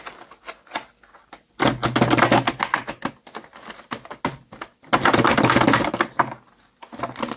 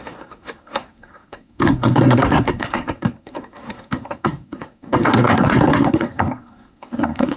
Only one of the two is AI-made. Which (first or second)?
second